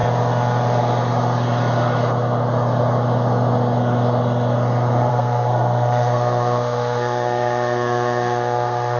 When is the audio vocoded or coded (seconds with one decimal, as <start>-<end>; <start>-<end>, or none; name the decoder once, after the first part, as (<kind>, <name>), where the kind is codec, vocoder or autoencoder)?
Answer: 5.1-9.0 (codec, SNAC)